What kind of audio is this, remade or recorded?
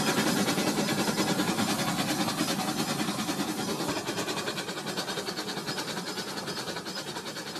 recorded